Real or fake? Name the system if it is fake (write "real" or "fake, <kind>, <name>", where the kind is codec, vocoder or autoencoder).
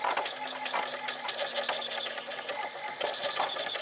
real